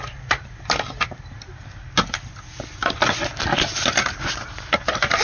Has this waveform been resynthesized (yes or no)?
no